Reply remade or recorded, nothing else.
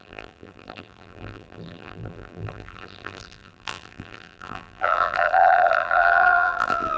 remade